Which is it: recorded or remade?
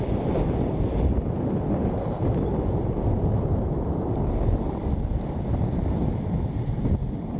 recorded